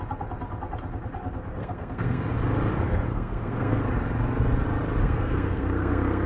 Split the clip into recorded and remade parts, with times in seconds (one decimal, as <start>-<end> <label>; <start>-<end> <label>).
0.0-1.6 recorded; 1.6-2.2 remade; 2.2-3.1 recorded; 3.1-3.8 remade; 3.8-5.0 recorded; 5.0-6.3 remade